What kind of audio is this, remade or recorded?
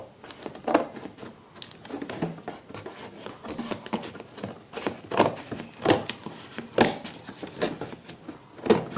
recorded